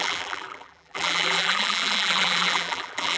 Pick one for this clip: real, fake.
fake